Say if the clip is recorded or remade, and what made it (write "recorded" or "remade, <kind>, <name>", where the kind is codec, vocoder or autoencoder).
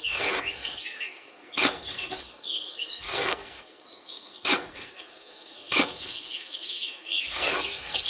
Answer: remade, codec, SNAC